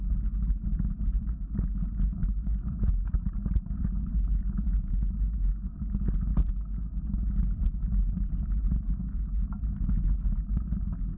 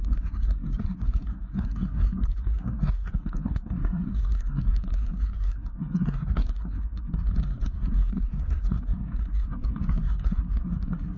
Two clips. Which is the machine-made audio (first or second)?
second